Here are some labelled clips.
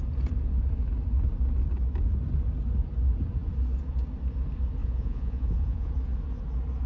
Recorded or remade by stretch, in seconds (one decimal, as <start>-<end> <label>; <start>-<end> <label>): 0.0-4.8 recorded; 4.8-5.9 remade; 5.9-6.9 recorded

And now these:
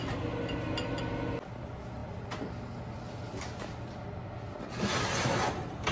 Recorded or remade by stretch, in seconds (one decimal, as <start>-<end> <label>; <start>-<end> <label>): 0.0-5.9 recorded

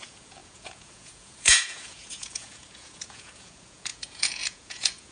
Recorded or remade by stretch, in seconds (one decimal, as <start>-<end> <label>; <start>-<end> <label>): 0.0-5.1 remade

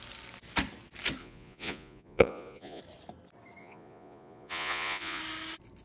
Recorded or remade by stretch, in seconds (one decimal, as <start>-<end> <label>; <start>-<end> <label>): 0.0-1.2 recorded; 1.2-2.8 remade; 2.8-3.6 recorded; 3.6-5.2 remade; 5.2-5.8 recorded

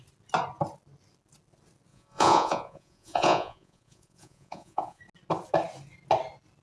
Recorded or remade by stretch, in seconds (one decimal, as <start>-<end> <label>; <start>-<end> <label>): 0.0-1.9 recorded; 1.9-5.0 remade; 5.0-6.6 recorded

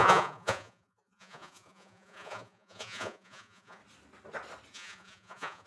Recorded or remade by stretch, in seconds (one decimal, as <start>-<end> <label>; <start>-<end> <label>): 0.0-3.8 remade; 3.8-4.7 recorded; 4.7-5.7 remade

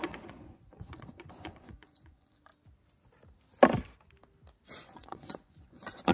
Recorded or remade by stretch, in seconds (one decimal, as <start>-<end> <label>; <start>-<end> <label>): 0.0-2.5 remade; 2.5-4.8 recorded; 4.8-6.1 remade

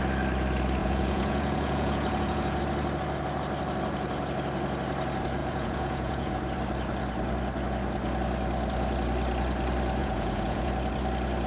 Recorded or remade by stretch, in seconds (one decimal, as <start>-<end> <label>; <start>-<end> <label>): 0.0-0.8 recorded; 0.8-2.6 remade; 2.6-5.4 recorded; 5.4-6.3 remade; 6.3-10.0 recorded; 10.0-10.7 remade; 10.7-11.5 recorded